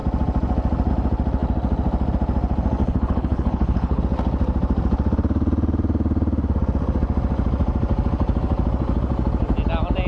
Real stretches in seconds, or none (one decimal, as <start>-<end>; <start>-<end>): 0.0-2.8; 4.0-10.1